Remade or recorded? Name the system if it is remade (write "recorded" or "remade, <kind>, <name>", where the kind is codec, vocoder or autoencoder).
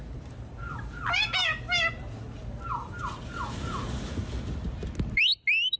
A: recorded